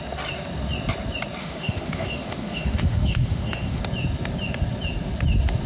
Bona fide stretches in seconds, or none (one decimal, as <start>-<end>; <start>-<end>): 0.0-1.4; 3.8-5.7